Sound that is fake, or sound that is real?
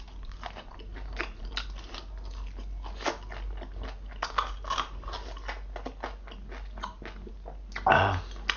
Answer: real